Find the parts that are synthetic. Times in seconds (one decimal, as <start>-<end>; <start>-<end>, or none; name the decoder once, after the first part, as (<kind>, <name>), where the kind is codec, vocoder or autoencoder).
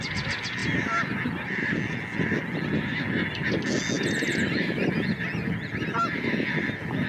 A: none